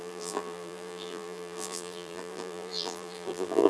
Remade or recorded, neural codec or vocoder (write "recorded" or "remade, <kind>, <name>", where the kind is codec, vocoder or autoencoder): remade, vocoder, BigVGAN v2